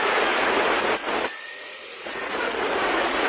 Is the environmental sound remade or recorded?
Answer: remade